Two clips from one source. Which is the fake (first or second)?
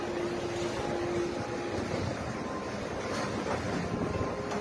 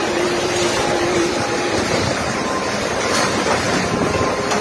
second